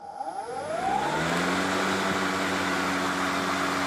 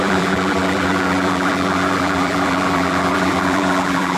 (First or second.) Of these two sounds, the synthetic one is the second